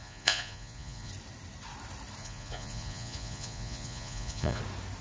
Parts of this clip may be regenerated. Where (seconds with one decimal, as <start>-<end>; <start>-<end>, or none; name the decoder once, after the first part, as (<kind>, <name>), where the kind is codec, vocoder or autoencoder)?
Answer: 0.0-1.1 (vocoder, Vocos); 2.2-4.6